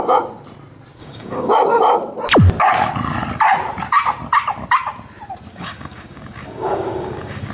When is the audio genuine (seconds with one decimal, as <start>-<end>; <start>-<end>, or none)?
0.0-1.0; 1.5-5.5